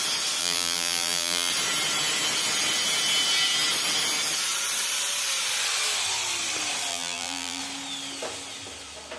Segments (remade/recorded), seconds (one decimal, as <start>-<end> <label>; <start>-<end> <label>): 0.0-0.4 recorded; 0.4-1.5 remade; 1.5-6.9 recorded; 6.9-7.6 remade; 7.6-9.2 recorded